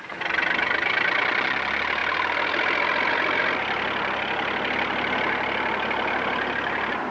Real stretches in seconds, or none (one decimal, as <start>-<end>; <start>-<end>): 0.0-7.1